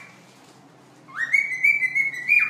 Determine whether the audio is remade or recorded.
recorded